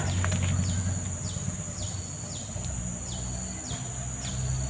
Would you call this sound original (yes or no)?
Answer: yes